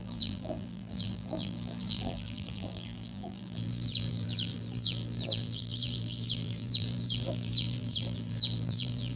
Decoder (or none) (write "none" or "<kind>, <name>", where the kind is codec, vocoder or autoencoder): vocoder, BigVGAN v2